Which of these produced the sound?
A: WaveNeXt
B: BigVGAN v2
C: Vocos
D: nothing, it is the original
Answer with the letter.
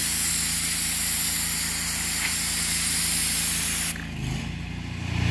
D